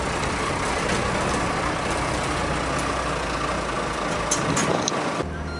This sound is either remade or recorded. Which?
recorded